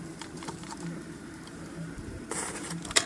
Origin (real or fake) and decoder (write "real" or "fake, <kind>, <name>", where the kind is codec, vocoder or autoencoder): fake, vocoder, BigVGAN v2